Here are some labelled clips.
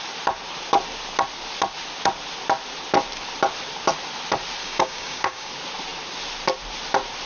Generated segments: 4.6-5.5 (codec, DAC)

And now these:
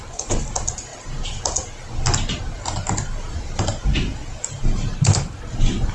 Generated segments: none